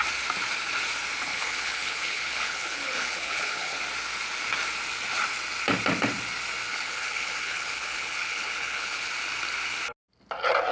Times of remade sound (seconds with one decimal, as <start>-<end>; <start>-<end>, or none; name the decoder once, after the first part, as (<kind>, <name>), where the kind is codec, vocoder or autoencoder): 1.3-3.8 (codec, HILCodec); 6.7-9.1